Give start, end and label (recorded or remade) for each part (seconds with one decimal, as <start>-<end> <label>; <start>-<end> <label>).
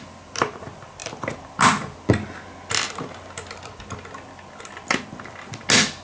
0.0-6.0 recorded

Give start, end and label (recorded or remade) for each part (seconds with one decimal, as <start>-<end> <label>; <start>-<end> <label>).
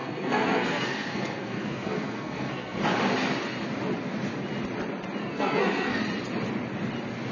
0.0-2.8 remade; 2.8-5.2 recorded; 5.2-6.0 remade; 6.0-7.3 recorded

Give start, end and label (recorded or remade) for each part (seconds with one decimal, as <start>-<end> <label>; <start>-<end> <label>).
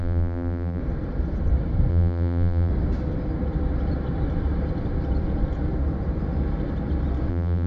0.0-0.8 remade; 0.8-1.9 recorded; 1.9-2.7 remade; 2.7-7.3 recorded; 7.3-7.7 remade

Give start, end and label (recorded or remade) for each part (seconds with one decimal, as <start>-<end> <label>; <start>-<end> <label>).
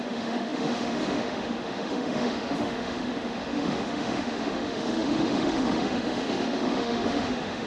0.0-7.7 remade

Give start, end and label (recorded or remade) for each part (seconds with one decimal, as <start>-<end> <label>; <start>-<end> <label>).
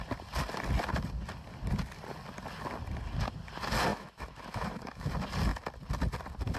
0.0-3.9 recorded; 3.9-5.1 remade; 5.1-6.6 recorded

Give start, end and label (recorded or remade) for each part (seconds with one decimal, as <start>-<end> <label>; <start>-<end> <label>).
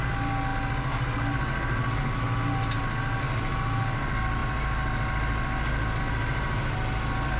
0.0-7.4 recorded